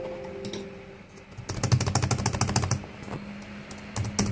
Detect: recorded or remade recorded